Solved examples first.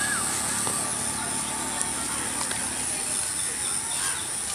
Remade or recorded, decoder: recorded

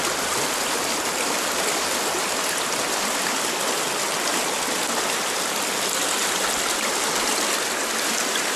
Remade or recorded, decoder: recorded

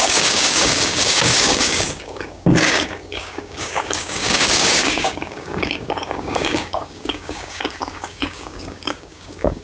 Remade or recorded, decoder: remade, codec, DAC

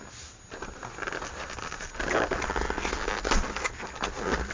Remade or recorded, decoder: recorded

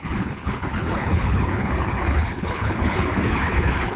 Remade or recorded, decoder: remade, codec, HILCodec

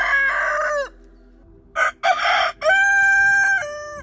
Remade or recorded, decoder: recorded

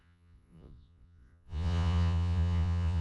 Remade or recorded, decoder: remade, vocoder, Vocos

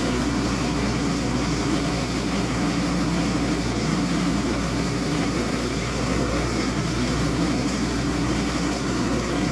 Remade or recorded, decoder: remade, codec, SNAC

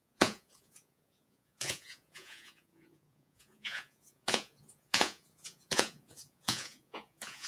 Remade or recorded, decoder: remade, vocoder, Vocos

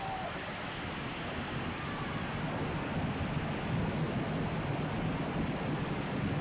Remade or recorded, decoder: recorded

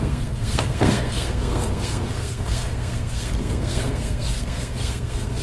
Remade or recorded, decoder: remade, codec, SNAC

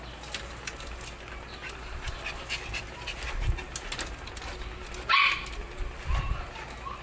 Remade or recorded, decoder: recorded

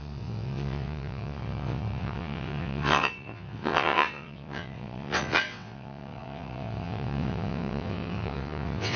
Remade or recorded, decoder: remade, vocoder, WaveNeXt